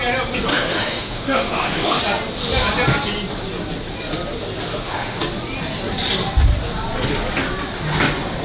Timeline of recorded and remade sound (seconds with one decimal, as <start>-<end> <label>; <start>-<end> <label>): 0.0-0.5 recorded; 0.5-2.0 remade; 2.0-4.7 recorded; 4.7-5.2 remade; 5.2-8.4 recorded